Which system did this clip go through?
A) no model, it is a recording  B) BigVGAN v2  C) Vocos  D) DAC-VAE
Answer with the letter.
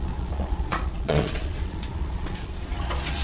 C